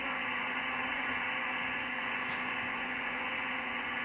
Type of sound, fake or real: fake